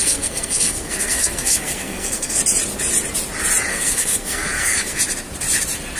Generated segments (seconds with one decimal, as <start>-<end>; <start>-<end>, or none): 0.0-2.4; 3.7-5.0